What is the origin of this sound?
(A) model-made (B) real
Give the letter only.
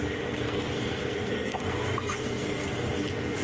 A